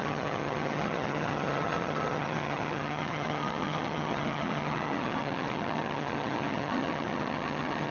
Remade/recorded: remade